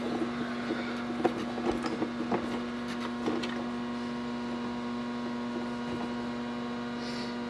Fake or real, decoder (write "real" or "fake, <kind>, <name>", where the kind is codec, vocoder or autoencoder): real